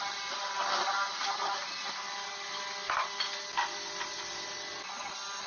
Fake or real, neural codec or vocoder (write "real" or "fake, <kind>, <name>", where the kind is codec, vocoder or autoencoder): real